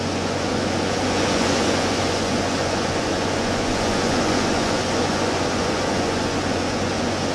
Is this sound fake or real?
fake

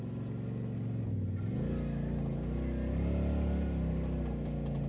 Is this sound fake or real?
real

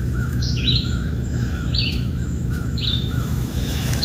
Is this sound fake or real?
fake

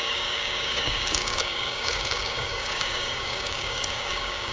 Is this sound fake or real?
fake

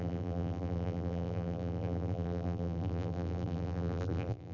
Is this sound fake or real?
fake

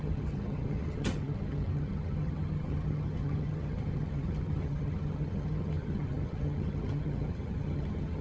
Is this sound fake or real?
fake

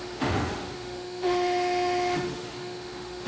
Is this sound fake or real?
fake